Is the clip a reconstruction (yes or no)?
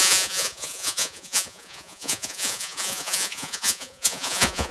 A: yes